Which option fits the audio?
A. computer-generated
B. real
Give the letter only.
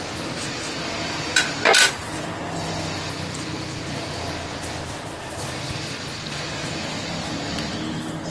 B